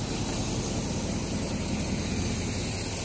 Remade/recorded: recorded